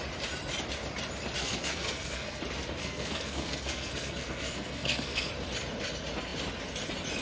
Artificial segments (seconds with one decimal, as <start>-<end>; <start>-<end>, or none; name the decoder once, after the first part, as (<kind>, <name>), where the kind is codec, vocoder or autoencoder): 1.4-2.4 (codec, SNAC); 2.8-5.3